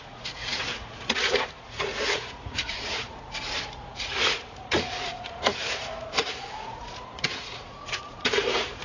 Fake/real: fake